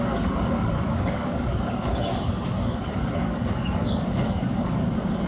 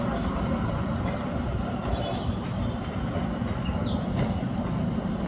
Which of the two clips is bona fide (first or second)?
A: second